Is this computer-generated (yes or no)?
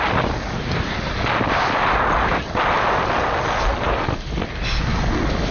no